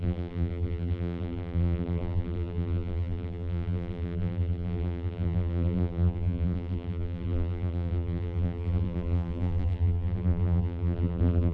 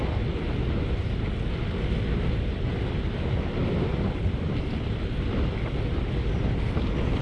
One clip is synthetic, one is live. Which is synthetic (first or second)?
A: first